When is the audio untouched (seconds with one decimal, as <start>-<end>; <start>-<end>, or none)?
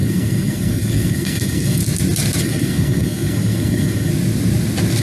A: 1.8-2.4; 4.1-5.0